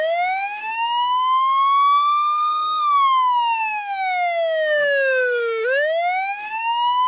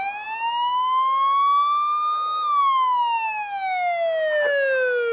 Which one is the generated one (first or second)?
first